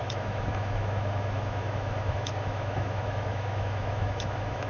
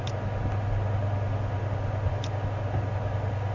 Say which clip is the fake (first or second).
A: first